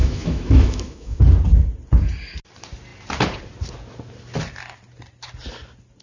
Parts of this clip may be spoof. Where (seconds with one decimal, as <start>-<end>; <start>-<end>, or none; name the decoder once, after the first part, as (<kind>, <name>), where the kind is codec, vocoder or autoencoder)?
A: 0.0-1.2 (autoencoder, DAC-VAE)